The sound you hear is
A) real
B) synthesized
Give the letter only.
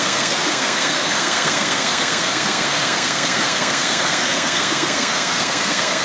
B